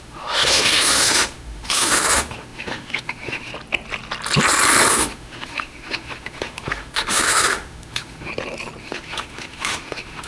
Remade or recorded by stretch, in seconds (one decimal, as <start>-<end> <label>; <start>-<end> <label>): 0.0-3.5 remade; 3.5-4.9 recorded; 4.9-8.3 remade; 8.3-8.8 recorded; 8.8-10.3 remade